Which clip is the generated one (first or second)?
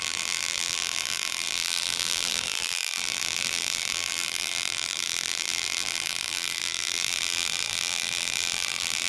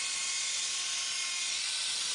first